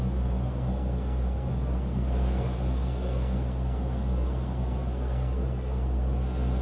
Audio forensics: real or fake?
fake